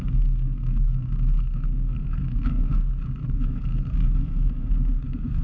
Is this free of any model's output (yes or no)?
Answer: no